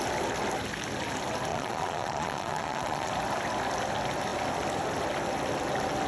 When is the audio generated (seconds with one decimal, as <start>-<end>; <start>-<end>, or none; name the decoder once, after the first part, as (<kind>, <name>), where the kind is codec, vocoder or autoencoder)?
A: 1.5-3.1 (vocoder, Vocos)